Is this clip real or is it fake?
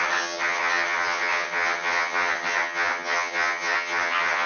fake